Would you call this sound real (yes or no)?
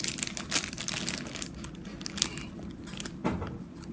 yes